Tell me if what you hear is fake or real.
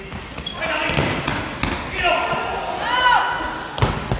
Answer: real